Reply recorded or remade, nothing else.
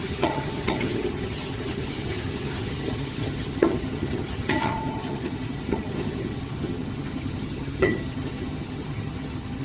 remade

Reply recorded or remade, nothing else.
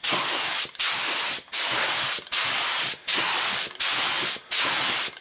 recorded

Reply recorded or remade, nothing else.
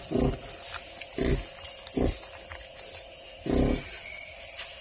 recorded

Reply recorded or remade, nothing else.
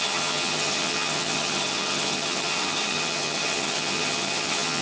remade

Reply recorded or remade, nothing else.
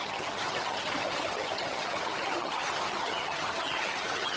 remade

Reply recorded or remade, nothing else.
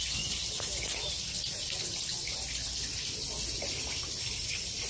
recorded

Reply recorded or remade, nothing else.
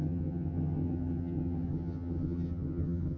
remade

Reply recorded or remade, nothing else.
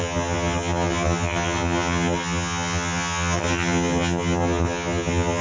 remade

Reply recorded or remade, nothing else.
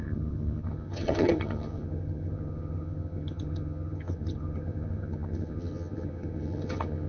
remade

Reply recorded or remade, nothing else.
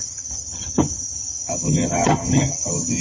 remade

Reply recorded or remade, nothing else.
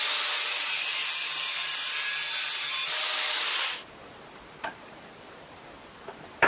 recorded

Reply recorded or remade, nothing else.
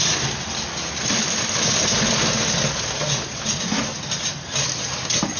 recorded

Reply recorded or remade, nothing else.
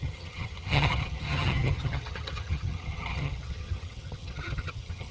remade